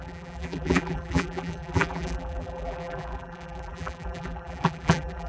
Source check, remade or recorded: remade